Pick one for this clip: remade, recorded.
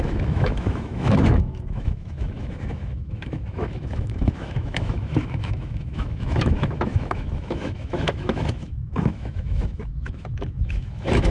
remade